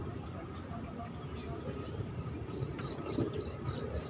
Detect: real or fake real